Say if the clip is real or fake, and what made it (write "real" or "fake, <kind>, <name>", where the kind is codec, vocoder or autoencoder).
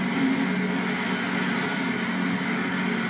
real